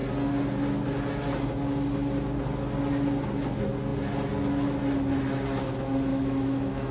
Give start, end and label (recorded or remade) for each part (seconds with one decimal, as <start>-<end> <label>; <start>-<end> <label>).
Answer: 0.0-6.1 recorded; 6.1-6.9 remade